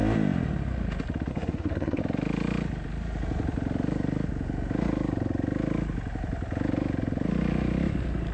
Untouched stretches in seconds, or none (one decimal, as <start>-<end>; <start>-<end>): 0.0-1.3; 2.0-8.3

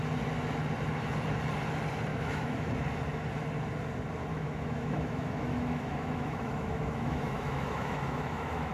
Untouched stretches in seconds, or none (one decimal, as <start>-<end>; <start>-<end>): 0.0-2.1; 2.7-4.3

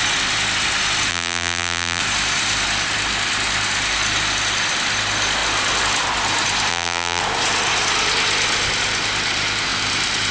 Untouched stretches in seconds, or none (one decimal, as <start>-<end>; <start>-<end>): 0.0-1.1; 2.0-6.7; 7.2-10.3

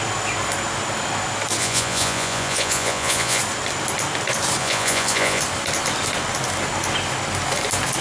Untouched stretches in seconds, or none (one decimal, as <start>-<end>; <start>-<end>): 0.0-1.6; 3.4-4.6; 5.4-8.0

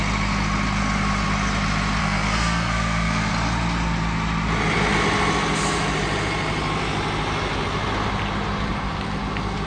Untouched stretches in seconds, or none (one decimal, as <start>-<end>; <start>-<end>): 0.0-2.0; 3.3-9.7